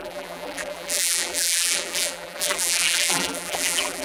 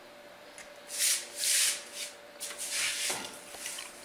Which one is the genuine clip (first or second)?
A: second